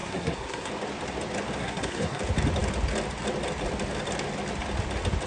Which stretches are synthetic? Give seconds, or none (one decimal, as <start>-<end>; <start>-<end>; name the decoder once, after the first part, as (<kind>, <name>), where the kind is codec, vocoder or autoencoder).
0.0-0.7 (codec, SNAC); 1.6-2.2